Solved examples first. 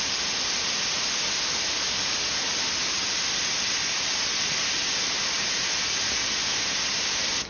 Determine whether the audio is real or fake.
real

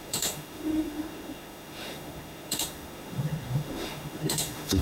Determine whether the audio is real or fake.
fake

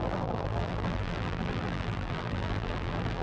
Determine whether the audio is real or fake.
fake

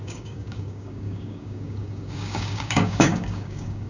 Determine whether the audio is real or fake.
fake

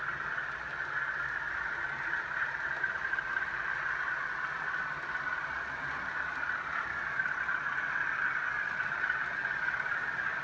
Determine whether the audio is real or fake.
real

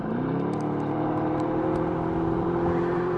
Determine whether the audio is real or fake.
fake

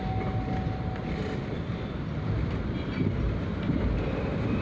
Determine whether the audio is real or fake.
real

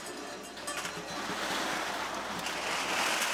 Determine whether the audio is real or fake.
real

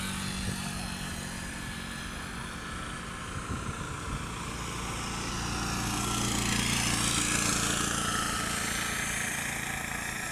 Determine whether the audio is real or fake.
real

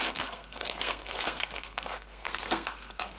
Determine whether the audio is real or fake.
fake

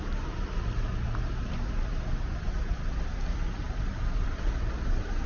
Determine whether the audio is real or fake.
real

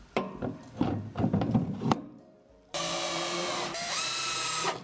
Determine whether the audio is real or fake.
fake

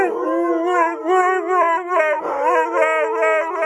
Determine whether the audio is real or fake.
real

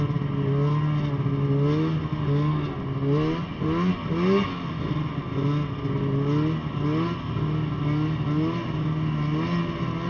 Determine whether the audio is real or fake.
real